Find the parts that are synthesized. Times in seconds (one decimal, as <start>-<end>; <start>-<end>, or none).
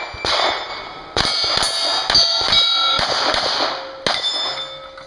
0.7-1.2; 2.3-3.4